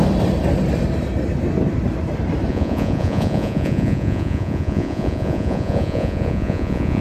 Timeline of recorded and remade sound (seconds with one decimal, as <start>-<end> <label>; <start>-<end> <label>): 0.0-2.5 recorded; 2.5-7.0 remade